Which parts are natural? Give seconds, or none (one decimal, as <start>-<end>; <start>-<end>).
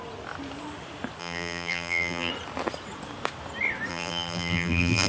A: 0.0-1.2; 2.3-3.9